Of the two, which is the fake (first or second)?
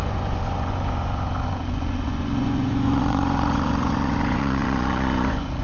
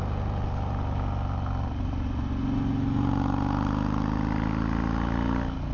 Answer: first